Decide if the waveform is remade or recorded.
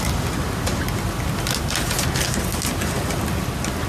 recorded